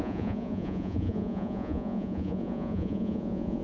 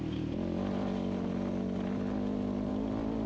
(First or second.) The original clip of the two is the second